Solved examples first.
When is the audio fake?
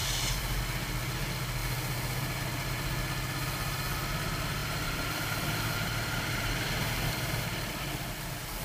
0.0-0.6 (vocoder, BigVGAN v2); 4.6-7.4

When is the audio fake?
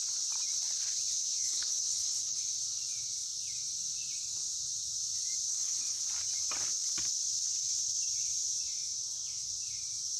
1.2-2.4 (codec, HILCodec); 5.5-6.0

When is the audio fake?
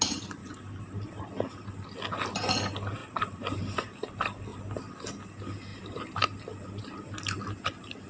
0.4-1.3 (vocoder, BigVGAN v2); 3.0-4.1